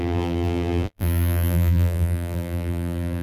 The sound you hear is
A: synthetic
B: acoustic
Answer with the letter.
A